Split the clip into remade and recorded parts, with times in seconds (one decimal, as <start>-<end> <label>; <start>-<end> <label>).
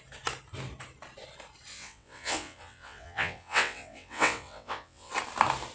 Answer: 0.0-1.7 recorded; 1.7-5.1 remade; 5.1-5.7 recorded